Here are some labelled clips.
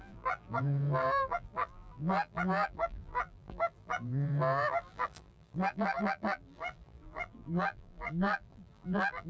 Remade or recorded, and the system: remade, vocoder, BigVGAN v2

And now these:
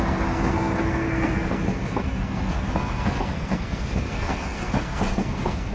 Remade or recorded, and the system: remade, codec, SNAC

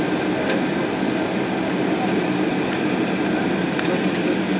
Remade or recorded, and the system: recorded